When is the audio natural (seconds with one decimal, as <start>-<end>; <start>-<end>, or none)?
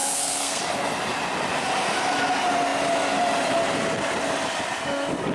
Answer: 0.6-5.3